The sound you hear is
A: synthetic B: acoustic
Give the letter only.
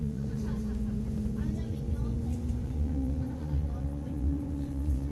A